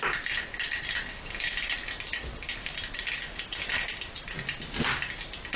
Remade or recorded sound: recorded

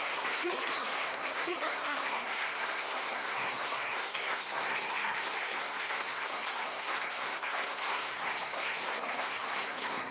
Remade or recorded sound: remade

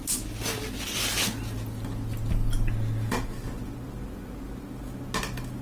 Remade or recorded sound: recorded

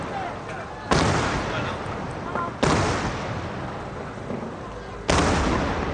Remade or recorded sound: recorded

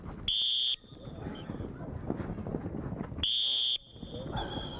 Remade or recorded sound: recorded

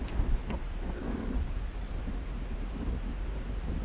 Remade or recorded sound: recorded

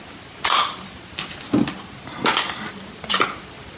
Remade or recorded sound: recorded